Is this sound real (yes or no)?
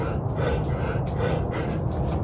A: yes